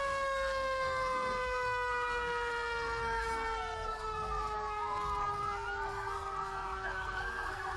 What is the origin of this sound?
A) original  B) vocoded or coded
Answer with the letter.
B